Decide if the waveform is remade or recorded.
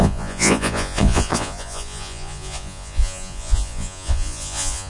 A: remade